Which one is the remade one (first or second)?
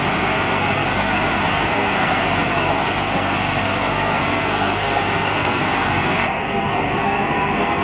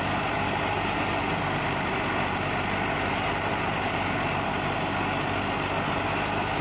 first